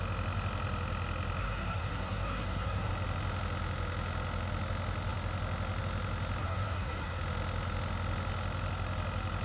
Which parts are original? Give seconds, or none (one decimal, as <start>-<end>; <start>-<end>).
0.0-1.4; 2.9-6.4; 7.2-9.4